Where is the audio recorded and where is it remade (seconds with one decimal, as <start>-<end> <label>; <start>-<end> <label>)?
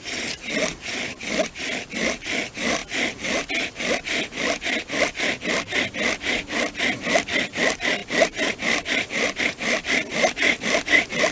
0.0-8.0 recorded; 8.0-9.4 remade; 9.4-11.3 recorded